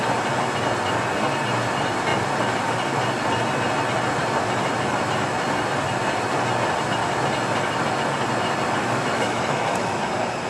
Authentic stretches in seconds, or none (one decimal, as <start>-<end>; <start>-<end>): 0.0-8.8; 10.0-10.5